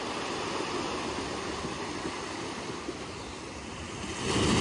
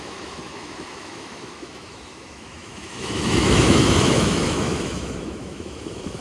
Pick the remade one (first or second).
second